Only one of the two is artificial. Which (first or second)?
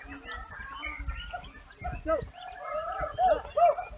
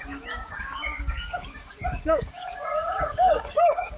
second